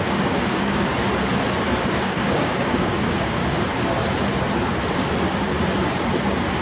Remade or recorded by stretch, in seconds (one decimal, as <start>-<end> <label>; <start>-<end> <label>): 0.0-0.9 remade; 0.9-1.9 recorded; 1.9-3.4 remade; 3.4-6.6 recorded